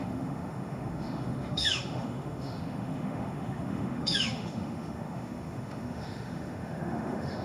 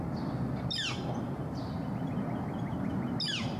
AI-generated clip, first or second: first